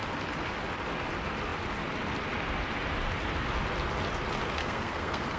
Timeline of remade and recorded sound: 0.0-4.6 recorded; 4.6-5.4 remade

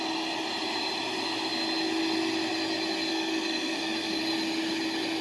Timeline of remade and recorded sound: 0.0-3.1 recorded; 3.1-4.2 remade; 4.2-5.2 recorded

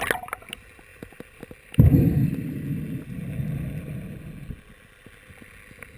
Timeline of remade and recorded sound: 0.0-0.9 recorded; 0.9-4.5 remade; 4.5-6.0 recorded